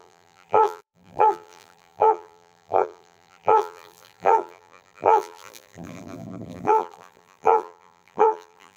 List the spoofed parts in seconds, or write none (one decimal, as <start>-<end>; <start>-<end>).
0.0-8.8